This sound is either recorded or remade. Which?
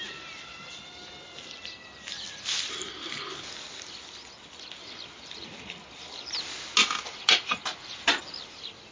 recorded